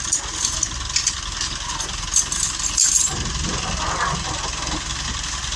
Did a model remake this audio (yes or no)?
no